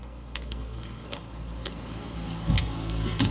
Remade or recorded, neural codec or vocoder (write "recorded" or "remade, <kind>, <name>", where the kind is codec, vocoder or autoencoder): remade, codec, SNAC